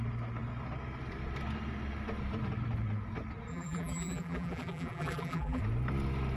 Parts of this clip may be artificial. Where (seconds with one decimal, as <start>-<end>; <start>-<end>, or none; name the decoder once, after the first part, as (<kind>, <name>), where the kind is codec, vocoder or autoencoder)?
3.5-5.6 (vocoder, BigVGAN v2)